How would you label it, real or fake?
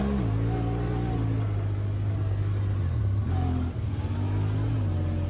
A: real